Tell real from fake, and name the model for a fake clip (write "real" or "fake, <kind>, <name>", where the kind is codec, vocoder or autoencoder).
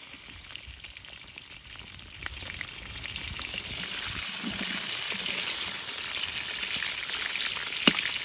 real